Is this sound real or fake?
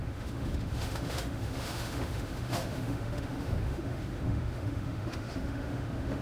fake